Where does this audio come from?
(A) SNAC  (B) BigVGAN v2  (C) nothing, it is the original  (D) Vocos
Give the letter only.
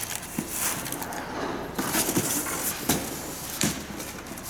C